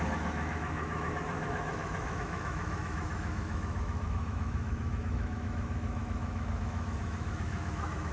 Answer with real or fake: fake